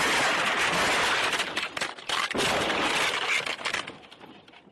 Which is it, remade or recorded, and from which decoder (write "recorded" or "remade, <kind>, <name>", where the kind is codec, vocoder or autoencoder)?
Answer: recorded